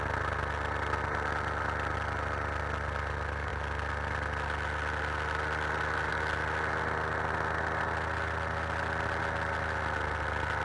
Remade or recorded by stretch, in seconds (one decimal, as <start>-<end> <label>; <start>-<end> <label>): 0.0-10.6 recorded